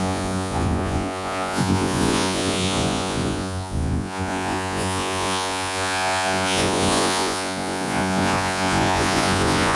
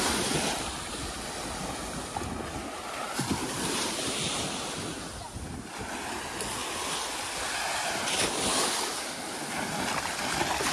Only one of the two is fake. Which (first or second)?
first